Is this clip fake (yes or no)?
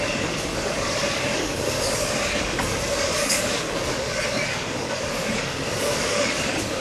yes